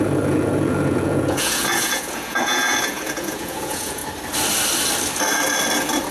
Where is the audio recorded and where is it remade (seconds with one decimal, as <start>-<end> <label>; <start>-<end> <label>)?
0.0-4.0 remade; 4.0-6.1 recorded